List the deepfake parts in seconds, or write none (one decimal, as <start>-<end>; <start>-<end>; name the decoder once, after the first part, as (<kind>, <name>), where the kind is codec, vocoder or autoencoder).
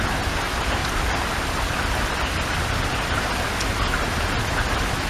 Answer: 0.8-3.3 (vocoder, BigVGAN v2)